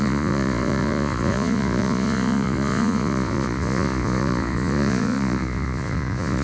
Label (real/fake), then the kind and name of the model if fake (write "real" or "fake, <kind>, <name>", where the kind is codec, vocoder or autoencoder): fake, vocoder, Vocos